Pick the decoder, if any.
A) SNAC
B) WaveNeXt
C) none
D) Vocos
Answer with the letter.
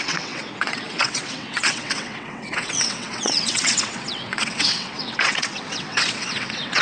B